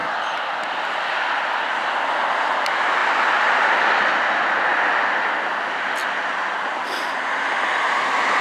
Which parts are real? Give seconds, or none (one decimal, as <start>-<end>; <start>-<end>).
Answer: 0.0-8.4